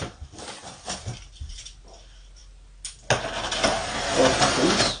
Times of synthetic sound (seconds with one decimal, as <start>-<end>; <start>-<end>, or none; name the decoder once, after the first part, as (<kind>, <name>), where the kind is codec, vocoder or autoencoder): none